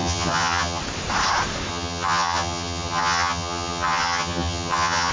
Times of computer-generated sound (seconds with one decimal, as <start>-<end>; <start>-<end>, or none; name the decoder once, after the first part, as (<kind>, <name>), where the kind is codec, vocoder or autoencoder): 0.0-0.8 (vocoder, HiFi-GAN); 1.7-5.1